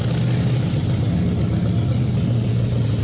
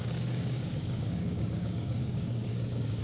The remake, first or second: second